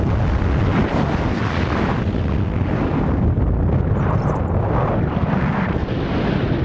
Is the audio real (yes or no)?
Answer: yes